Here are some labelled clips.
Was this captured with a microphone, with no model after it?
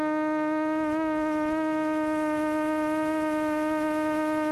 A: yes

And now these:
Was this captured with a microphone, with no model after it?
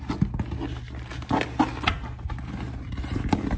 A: yes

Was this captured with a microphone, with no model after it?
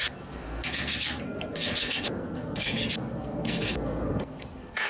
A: no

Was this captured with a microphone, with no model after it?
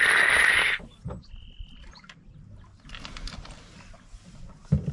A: yes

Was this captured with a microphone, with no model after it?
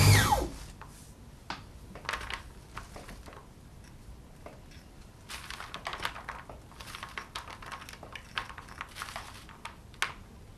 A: yes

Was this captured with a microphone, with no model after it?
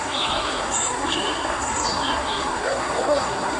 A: no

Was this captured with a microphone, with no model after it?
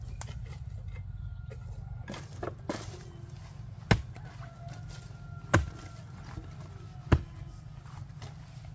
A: yes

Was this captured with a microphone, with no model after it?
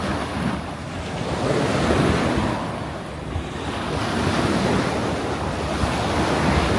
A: yes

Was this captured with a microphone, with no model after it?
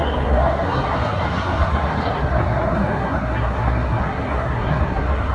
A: no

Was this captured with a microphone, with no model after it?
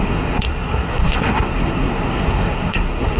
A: no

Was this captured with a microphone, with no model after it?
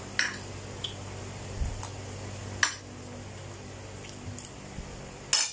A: yes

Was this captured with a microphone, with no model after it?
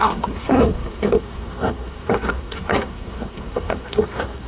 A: no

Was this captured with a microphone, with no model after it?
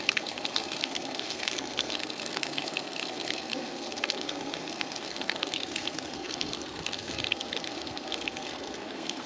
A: no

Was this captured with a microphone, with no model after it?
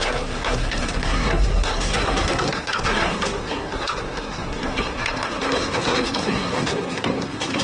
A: no